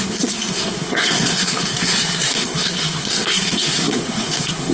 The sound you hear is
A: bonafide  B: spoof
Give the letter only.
B